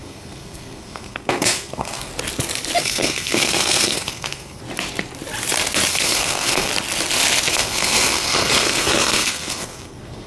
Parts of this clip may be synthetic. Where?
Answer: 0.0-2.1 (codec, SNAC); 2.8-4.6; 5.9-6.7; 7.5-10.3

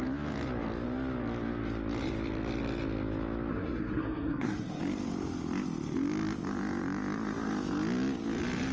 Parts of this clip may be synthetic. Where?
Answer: 3.5-4.8 (codec, SNAC)

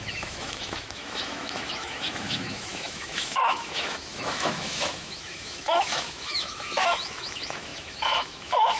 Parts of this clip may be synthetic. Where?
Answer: 0.0-8.8 (autoencoder, DAC-VAE)